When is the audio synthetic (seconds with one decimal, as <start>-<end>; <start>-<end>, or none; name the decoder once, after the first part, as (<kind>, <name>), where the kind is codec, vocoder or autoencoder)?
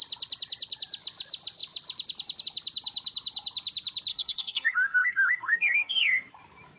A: 4.1-6.3 (codec, SNAC)